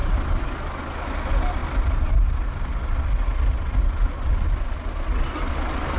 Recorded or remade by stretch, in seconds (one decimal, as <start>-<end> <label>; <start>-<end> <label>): 0.0-6.0 recorded